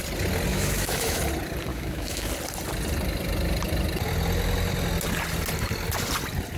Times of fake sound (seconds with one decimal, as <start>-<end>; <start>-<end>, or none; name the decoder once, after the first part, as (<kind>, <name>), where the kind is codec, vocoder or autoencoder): 0.5-1.2 (autoencoder, DAC-VAE); 1.7-2.3